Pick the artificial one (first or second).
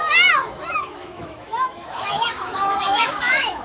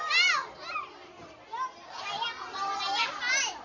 first